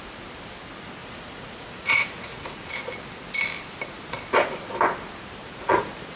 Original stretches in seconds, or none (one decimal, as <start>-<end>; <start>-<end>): 0.0-1.0; 2.9-5.4